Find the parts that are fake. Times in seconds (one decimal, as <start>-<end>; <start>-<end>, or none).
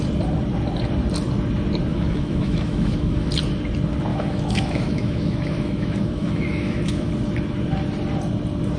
1.9-3.3; 4.1-7.1